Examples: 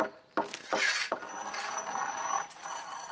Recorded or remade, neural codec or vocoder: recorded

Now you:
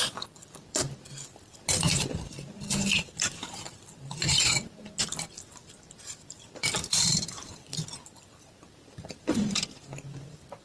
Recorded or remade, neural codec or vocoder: remade, vocoder, BigVGAN v2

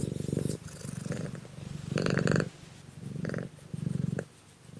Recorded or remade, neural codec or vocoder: recorded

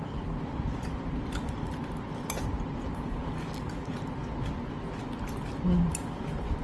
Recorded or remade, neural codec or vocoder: recorded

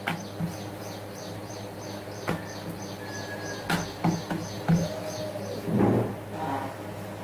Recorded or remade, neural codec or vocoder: recorded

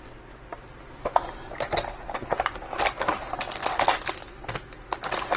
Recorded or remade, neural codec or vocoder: recorded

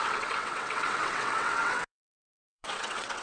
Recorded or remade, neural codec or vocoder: remade, vocoder, WaveNeXt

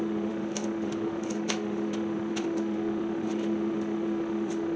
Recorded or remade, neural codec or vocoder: remade, autoencoder, DAC-VAE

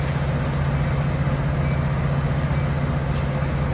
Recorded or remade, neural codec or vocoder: recorded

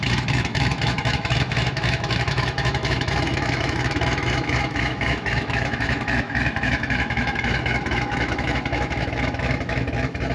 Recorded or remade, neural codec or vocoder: remade, autoencoder, DAC-VAE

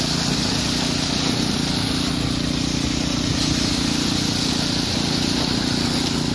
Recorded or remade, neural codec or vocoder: recorded